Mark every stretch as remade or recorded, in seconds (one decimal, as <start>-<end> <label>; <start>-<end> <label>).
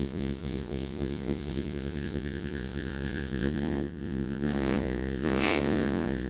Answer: 0.0-6.3 remade